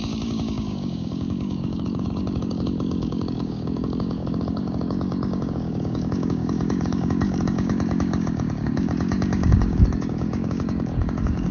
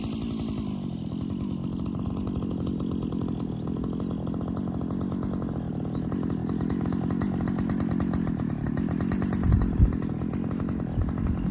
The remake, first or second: first